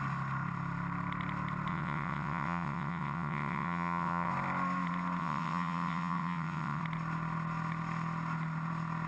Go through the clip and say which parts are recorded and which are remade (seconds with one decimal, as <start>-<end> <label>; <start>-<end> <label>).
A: 0.0-1.7 recorded; 1.7-4.3 remade; 4.3-5.2 recorded; 5.2-6.8 remade; 6.8-9.1 recorded